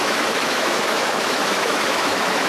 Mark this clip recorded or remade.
remade